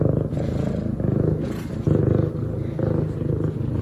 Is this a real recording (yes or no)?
yes